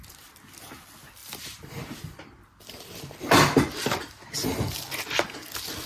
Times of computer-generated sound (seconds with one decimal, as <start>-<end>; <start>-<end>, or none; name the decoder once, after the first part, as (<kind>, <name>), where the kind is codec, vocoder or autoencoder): 1.2-4.7 (vocoder, BigVGAN v2)